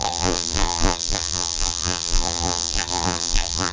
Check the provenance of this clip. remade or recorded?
remade